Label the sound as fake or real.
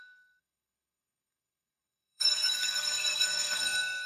fake